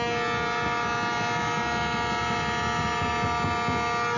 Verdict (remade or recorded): recorded